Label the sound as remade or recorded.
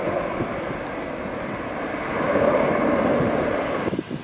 recorded